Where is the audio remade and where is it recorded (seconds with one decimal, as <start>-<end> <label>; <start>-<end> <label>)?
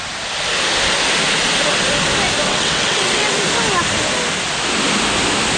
0.0-2.5 recorded; 2.5-3.3 remade; 3.3-5.6 recorded